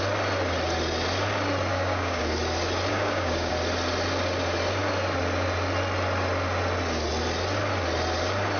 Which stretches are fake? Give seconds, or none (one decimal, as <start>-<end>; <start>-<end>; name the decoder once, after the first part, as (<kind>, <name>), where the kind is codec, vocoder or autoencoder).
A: 1.7-2.2 (codec, DAC); 2.9-3.5

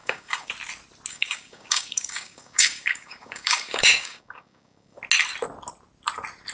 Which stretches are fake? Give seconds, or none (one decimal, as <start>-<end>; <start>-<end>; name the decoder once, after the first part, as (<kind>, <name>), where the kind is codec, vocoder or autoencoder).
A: 0.0-0.5 (codec, DAC); 1.1-5.0

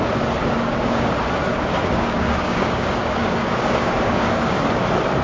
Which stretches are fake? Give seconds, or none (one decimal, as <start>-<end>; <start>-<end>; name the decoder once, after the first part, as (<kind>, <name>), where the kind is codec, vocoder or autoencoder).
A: 0.4-1.1 (codec, DAC); 1.5-4.6